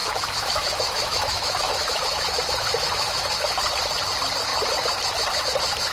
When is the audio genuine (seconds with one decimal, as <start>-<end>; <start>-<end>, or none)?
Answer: 3.5-5.9